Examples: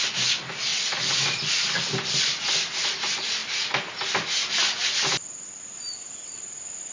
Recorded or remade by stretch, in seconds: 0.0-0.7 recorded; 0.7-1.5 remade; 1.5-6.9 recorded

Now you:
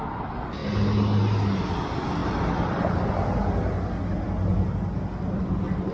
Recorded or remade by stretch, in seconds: 0.0-2.2 recorded; 2.2-3.0 remade; 3.0-5.9 recorded

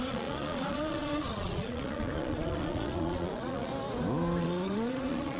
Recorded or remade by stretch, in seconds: 0.0-3.7 remade; 3.7-4.4 recorded; 4.4-5.4 remade